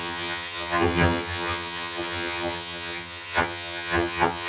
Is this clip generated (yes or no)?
yes